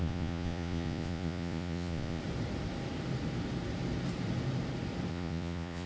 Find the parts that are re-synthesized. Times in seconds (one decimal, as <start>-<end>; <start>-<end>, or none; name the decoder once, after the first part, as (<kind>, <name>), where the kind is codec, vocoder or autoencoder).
0.0-2.2 (vocoder, Vocos); 5.1-5.9